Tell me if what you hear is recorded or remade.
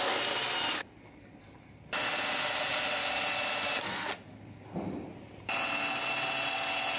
recorded